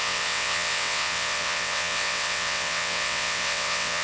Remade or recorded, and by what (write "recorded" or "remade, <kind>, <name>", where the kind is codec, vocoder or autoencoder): remade, vocoder, WaveNeXt